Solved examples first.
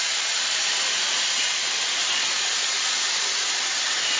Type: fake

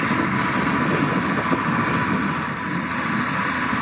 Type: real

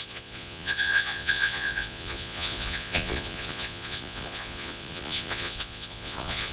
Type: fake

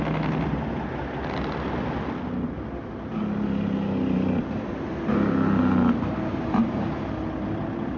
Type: real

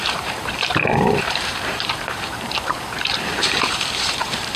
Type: fake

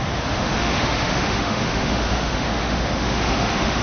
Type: fake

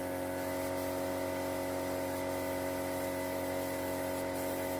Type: real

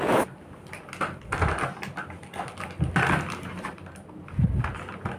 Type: real